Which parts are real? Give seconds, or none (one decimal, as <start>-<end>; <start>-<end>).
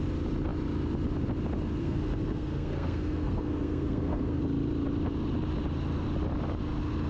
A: 0.0-1.8; 4.4-7.1